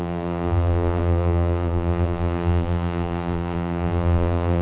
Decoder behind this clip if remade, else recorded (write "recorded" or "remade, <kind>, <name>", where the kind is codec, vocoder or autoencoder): remade, vocoder, BigVGAN v2